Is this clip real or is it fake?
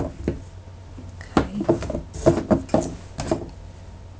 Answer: real